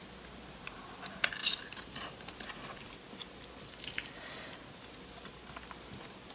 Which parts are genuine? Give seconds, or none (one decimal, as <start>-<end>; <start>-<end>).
0.0-1.4; 2.3-3.6; 4.6-6.3